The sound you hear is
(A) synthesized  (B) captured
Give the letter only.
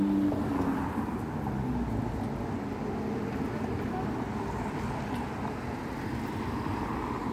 B